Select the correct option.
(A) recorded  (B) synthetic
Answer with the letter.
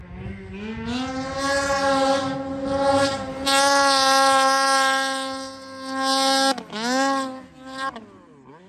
A